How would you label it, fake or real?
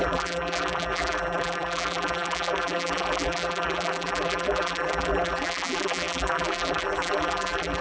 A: fake